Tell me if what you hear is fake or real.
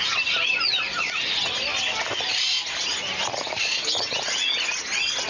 real